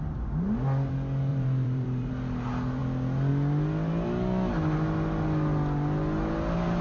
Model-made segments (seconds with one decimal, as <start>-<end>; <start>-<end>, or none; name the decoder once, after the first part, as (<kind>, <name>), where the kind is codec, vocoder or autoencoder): 1.3-2.1 (vocoder, BigVGAN v2)